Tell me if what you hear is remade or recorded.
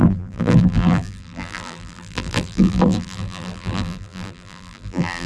remade